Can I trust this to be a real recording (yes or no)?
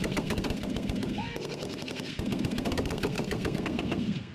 no